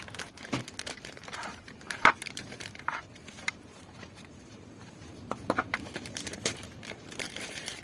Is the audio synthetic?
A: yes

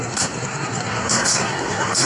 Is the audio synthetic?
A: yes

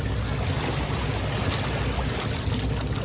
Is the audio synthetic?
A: no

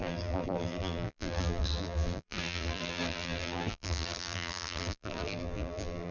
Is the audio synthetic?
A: yes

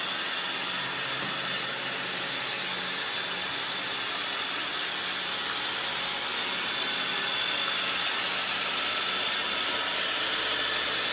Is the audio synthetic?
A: no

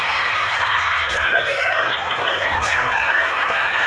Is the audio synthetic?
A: yes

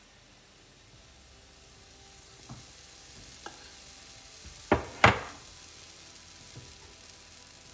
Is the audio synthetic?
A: no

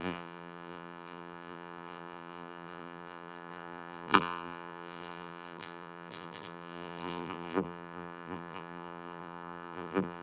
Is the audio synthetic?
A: yes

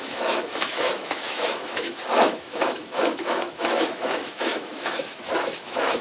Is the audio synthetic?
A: yes